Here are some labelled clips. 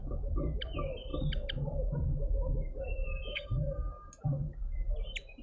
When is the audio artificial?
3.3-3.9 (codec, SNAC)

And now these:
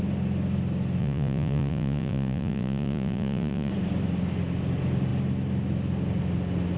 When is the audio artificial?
1.0-3.7 (vocoder, Vocos)

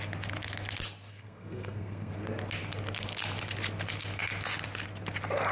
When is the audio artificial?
1.1-2.1 (codec, SNAC)

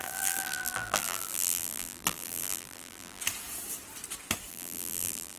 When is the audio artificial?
0.0-3.2 (vocoder, BigVGAN v2); 4.5-5.4

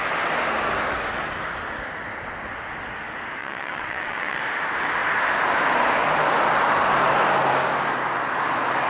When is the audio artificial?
3.4-4.4 (vocoder, WaveNeXt)

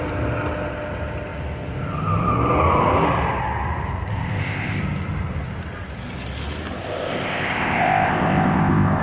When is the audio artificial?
4.1-4.8 (codec, ZipCodec); 6.8-9.0

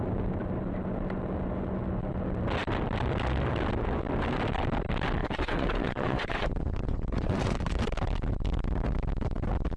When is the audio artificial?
5.2-7.8 (vocoder, WaveNeXt)